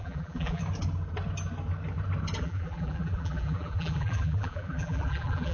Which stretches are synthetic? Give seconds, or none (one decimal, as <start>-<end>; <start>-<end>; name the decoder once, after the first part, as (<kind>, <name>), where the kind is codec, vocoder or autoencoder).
0.0-0.6 (vocoder, BigVGAN v2); 2.4-5.5